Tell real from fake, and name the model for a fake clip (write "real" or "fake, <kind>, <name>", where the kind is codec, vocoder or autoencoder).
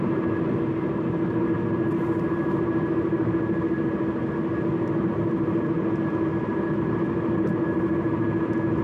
real